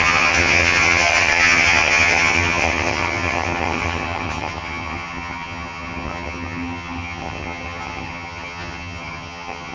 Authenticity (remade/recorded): remade